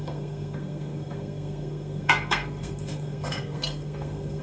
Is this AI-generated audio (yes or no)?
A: yes